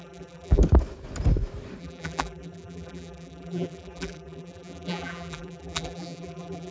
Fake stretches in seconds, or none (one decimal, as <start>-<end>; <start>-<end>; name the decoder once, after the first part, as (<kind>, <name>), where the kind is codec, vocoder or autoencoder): 0.0-0.6 (vocoder, BigVGAN v2); 1.8-6.7

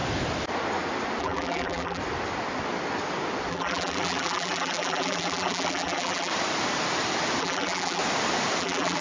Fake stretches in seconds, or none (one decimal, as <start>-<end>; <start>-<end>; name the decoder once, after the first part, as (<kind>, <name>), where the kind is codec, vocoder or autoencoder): 1.2-2.0 (vocoder, BigVGAN v2); 3.5-6.3; 7.4-8.0; 8.6-9.0

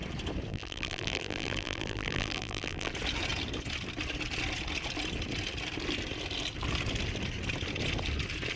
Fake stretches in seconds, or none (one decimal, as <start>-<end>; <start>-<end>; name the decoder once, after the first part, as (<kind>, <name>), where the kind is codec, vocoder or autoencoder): 0.5-2.9 (vocoder, BigVGAN v2)

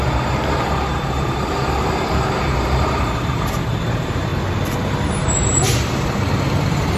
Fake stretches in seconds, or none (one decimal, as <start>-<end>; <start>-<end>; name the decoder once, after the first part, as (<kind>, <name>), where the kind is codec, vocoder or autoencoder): 0.0-4.3 (vocoder, BigVGAN v2); 4.9-7.0

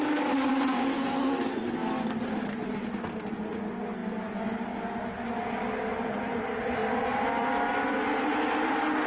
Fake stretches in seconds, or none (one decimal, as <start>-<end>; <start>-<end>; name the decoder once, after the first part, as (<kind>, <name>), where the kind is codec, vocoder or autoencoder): none

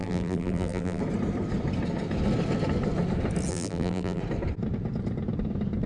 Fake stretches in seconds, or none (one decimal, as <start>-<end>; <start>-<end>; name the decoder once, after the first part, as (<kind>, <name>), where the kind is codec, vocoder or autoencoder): 0.0-1.0 (vocoder, BigVGAN v2); 3.5-4.2